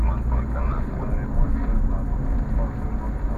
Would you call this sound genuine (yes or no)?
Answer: yes